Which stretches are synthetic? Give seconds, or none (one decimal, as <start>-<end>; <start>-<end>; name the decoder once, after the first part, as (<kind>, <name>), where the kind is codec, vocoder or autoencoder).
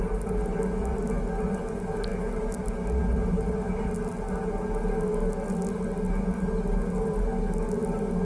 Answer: none